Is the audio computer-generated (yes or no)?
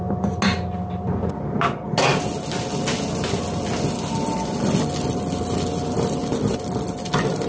no